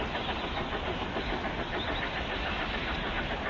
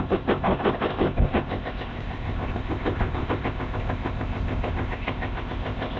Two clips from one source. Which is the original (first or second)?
first